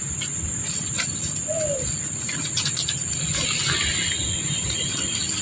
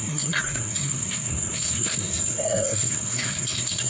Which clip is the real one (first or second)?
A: first